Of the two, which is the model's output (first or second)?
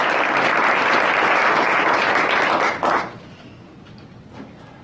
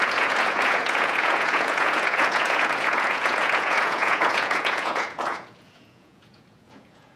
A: second